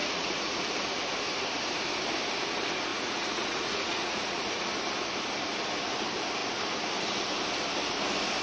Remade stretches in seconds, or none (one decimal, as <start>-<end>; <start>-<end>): 0.0-0.6; 2.9-4.7